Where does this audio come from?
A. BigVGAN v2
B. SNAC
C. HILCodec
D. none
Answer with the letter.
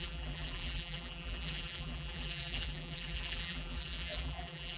A